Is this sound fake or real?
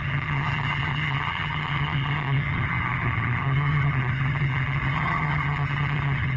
fake